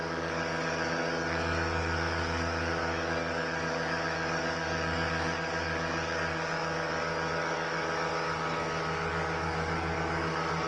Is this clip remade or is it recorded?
remade